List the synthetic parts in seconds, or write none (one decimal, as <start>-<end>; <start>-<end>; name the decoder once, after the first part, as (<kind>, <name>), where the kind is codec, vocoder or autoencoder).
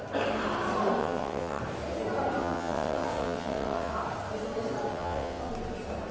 1.0-1.6 (vocoder, WaveNeXt); 2.4-3.9; 4.9-5.5